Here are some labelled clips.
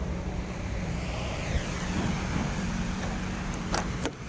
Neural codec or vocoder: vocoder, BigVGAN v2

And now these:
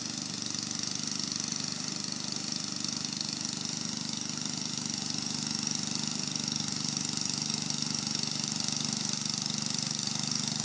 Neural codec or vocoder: none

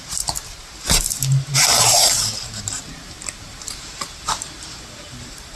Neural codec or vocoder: vocoder, BigVGAN v2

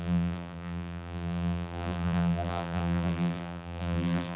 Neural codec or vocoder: vocoder, BigVGAN v2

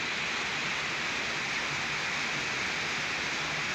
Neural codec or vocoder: none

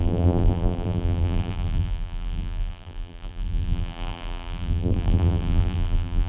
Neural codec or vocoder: vocoder, BigVGAN v2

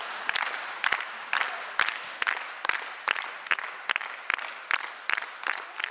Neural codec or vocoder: none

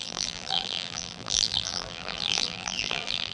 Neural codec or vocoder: vocoder, BigVGAN v2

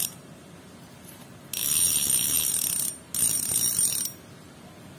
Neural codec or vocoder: none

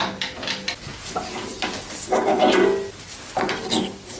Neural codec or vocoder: none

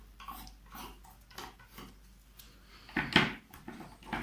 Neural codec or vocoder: none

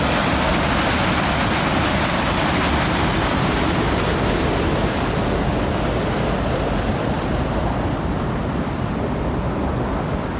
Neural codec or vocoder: none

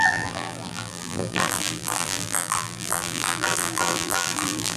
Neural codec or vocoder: vocoder, BigVGAN v2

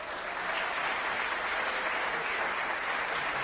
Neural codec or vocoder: none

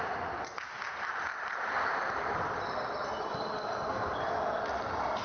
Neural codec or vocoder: none